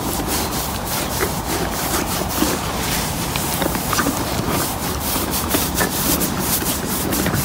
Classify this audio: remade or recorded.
remade